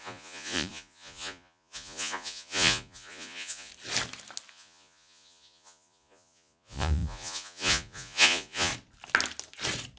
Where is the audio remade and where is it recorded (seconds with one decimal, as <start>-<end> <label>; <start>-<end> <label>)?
0.0-3.7 remade; 3.7-4.5 recorded; 4.5-8.7 remade; 8.7-10.0 recorded